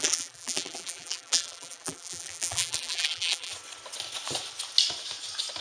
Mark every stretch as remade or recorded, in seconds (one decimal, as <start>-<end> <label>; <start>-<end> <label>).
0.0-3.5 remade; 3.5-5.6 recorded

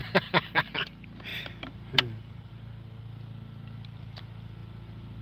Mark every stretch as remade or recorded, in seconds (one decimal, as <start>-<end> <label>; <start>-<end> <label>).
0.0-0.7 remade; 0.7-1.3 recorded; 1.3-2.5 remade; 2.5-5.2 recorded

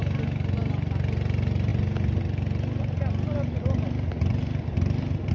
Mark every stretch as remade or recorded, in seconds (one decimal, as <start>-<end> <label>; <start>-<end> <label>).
0.0-5.3 recorded

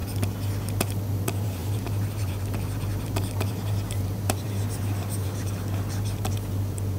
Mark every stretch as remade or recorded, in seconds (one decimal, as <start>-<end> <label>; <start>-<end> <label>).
0.0-1.1 recorded; 1.1-7.0 remade

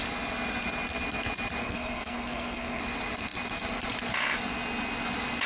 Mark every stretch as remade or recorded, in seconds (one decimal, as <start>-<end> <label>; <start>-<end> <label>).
0.0-1.6 recorded; 1.6-2.8 remade; 2.8-5.5 recorded

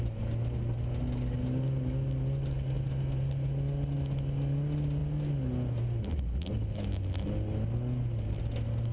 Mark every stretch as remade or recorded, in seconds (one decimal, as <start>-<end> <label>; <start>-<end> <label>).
0.0-8.9 recorded

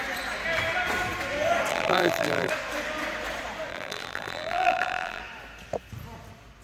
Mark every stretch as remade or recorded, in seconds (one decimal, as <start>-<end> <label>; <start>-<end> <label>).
0.0-1.7 recorded; 1.7-2.5 remade; 2.5-3.7 recorded; 3.7-5.2 remade; 5.2-6.6 recorded

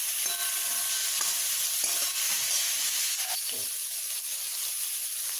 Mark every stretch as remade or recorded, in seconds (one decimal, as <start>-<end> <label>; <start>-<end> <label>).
0.0-4.3 remade; 4.3-4.9 recorded; 4.9-5.4 remade